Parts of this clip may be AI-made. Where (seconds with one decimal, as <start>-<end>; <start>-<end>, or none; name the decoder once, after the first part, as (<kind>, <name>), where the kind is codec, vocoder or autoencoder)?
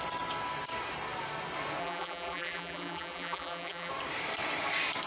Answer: 1.8-3.9 (vocoder, BigVGAN v2)